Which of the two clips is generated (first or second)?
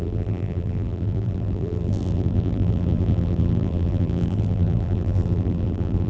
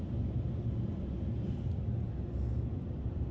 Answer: first